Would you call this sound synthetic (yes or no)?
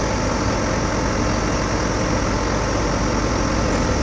no